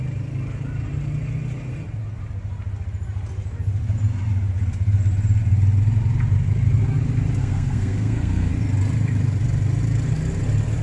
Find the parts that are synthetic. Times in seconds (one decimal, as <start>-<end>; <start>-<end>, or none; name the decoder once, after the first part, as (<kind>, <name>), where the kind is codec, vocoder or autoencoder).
7.4-8.5 (codec, SNAC)